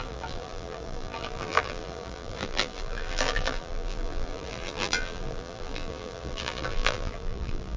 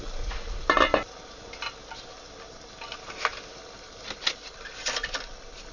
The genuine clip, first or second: second